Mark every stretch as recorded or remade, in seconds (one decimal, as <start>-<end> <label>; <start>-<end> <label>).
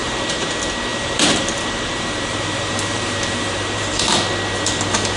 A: 0.0-0.5 remade; 0.5-0.9 recorded; 0.9-4.0 remade; 4.0-5.2 recorded